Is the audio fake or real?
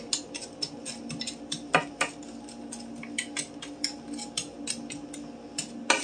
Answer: real